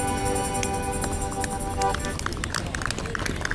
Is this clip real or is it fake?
real